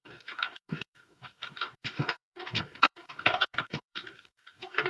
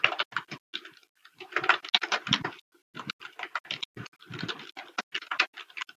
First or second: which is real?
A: second